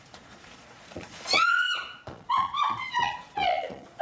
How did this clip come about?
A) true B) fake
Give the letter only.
B